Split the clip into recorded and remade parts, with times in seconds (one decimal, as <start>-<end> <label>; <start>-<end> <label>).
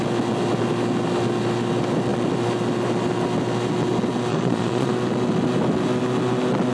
0.0-4.3 recorded; 4.3-4.9 remade; 4.9-6.7 recorded